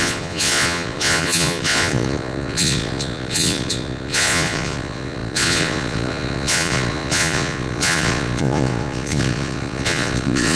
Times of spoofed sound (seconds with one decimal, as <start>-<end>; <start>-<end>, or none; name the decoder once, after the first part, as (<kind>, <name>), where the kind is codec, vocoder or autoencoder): 0.0-10.6 (vocoder, Vocos)